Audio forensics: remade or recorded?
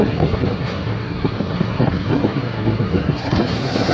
remade